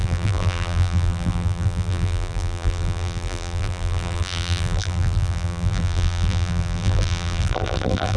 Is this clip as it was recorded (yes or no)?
no